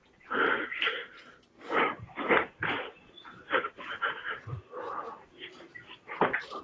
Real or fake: real